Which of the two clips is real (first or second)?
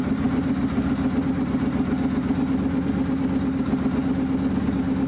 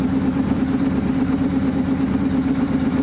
first